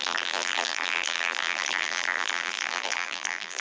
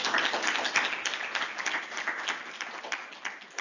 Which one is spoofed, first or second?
first